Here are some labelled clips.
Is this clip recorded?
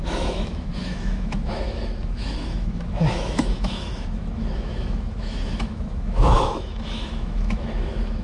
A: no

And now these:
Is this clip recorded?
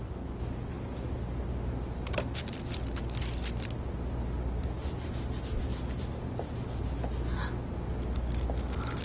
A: yes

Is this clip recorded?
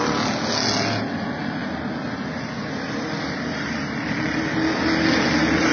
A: yes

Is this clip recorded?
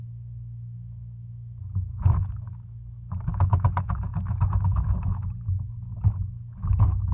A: no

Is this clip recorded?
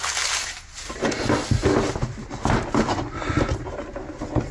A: yes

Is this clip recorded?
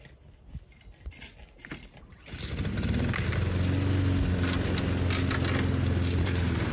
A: yes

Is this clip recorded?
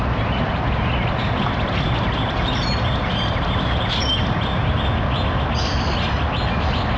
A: yes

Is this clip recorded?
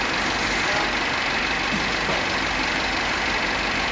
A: yes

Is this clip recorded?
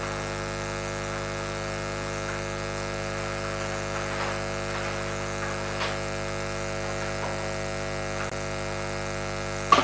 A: yes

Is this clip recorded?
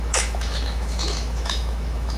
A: no